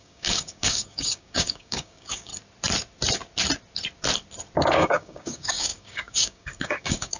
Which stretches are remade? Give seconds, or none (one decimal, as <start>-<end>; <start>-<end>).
0.0-2.3; 4.7-7.2